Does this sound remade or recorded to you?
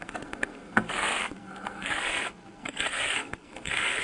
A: remade